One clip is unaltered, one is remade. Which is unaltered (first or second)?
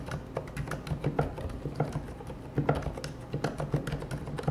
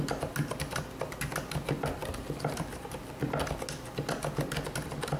first